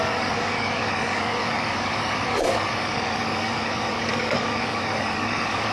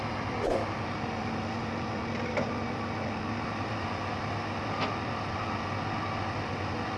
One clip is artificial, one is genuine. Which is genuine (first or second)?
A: second